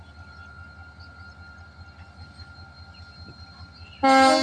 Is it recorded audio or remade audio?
recorded